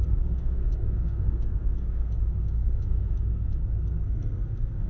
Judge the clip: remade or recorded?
remade